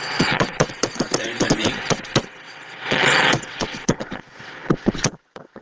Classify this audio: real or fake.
fake